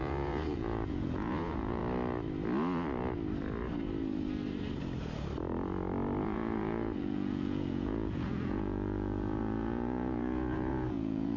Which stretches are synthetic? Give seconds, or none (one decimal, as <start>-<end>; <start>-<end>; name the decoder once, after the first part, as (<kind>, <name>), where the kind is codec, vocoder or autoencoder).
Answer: 0.0-1.8 (vocoder, Vocos); 6.2-11.4